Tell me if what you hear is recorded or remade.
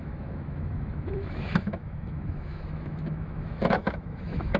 remade